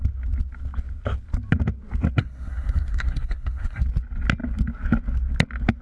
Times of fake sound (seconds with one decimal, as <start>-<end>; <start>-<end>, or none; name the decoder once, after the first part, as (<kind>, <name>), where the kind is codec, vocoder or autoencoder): 2.2-3.8 (codec, SNAC)